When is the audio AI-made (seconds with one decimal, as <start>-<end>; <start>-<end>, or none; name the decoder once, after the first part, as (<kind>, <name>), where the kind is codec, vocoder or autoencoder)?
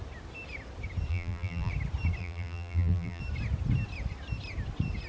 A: 1.1-1.7 (vocoder, BigVGAN v2); 2.2-3.2